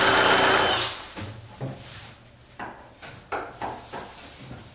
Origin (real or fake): real